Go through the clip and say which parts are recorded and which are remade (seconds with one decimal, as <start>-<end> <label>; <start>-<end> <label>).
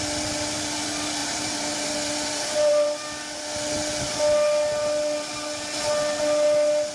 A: 0.0-1.2 recorded; 1.2-3.0 remade; 3.0-6.9 recorded